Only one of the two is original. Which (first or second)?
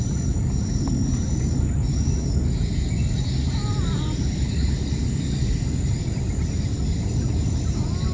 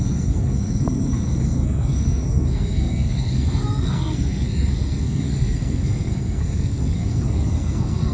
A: first